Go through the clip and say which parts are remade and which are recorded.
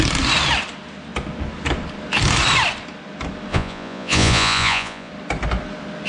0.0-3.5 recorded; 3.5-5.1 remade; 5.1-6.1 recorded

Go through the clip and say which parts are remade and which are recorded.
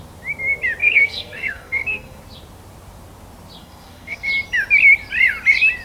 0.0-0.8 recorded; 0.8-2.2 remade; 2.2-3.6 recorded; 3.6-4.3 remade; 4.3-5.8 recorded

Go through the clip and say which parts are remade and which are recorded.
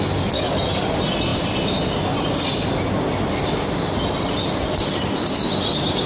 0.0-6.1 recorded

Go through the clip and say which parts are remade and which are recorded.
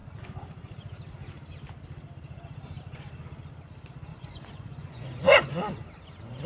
0.0-4.1 recorded; 4.1-5.5 remade; 5.5-6.5 recorded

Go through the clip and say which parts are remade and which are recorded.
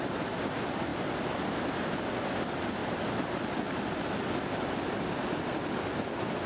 0.0-6.5 recorded